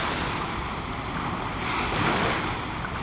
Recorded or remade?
recorded